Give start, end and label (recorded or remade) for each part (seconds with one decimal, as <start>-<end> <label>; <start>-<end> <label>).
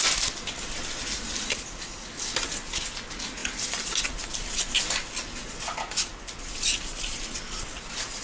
0.0-3.4 recorded; 3.4-4.0 remade; 4.0-6.1 recorded; 6.1-7.4 remade; 7.4-8.2 recorded